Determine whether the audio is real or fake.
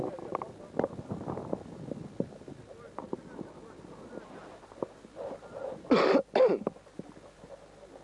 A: real